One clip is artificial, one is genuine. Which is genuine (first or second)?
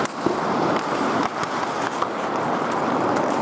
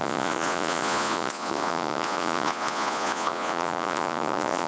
first